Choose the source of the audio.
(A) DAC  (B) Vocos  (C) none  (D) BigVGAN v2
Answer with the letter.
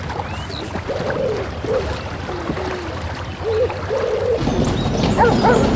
C